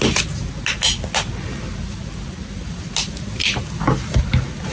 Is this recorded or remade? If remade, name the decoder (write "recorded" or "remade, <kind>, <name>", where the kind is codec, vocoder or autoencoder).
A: recorded